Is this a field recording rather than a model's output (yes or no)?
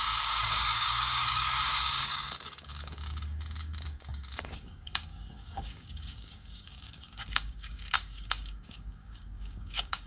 no